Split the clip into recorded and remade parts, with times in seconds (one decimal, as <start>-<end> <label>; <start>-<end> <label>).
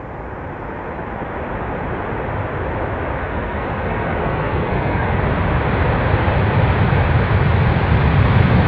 0.0-3.2 recorded; 3.2-5.2 remade; 5.2-8.7 recorded